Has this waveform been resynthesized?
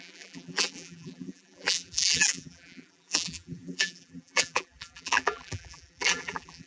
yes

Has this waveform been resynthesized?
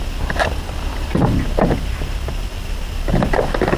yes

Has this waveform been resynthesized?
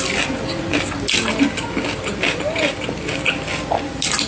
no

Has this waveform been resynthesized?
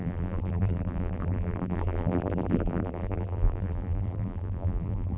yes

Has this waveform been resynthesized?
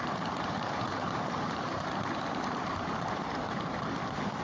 yes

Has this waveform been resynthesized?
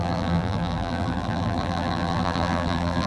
yes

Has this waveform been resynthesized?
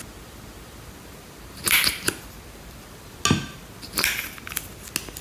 no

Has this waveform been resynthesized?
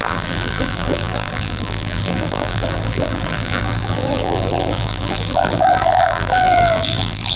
yes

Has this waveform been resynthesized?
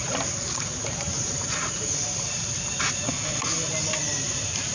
no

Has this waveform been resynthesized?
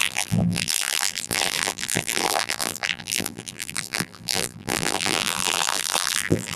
yes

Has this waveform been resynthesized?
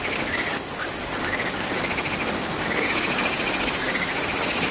no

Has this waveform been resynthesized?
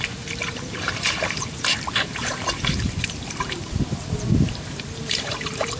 yes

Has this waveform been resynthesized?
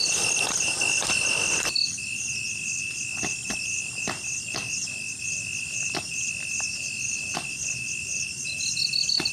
no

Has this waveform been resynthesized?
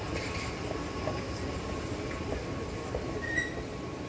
no